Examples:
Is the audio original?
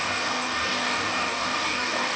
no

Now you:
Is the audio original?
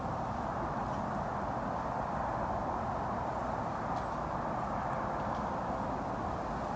yes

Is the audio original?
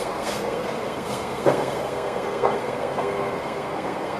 no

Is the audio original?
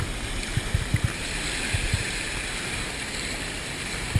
yes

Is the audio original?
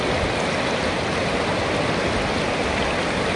yes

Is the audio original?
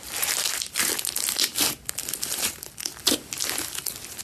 yes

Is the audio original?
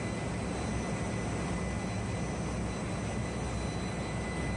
yes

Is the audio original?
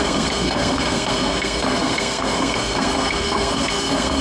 no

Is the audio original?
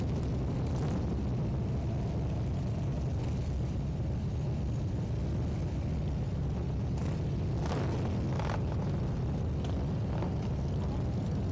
yes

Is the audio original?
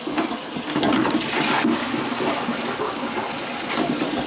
yes